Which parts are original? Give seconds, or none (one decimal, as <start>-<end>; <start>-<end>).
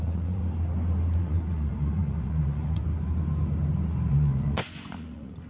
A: 0.4-1.2; 2.8-4.1